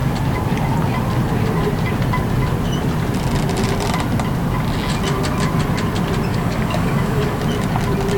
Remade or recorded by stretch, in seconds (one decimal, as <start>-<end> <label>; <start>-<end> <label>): 0.0-6.3 recorded; 6.3-7.4 remade; 7.4-8.2 recorded